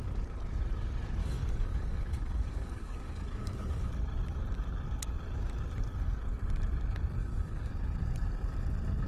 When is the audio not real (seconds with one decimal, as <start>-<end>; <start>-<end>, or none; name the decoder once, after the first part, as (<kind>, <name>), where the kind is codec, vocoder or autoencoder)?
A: 1.2-3.9 (codec, DAC); 7.2-7.7